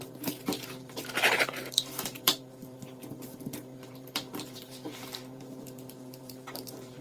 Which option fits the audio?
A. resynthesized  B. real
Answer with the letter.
A